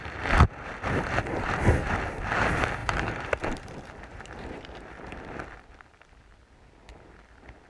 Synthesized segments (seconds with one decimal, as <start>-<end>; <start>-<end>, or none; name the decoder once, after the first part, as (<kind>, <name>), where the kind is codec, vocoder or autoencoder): 2.8-5.3 (vocoder, BigVGAN v2)